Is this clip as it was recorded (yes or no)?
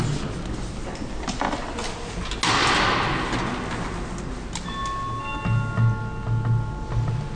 yes